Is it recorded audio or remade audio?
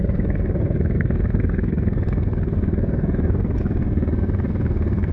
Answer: remade